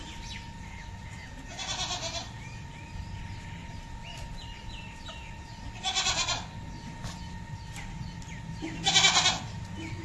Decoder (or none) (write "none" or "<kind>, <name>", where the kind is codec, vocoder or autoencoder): none